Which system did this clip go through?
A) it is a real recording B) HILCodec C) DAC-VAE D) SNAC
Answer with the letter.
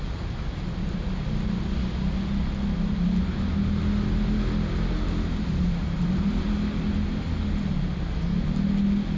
A